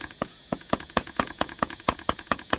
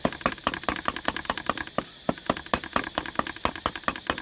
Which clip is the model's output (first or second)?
first